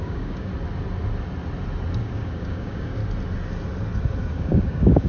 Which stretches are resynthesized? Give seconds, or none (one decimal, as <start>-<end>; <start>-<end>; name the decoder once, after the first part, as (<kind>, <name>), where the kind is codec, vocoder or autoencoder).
0.0-0.5 (codec, DAC); 2.0-3.0; 4.3-5.1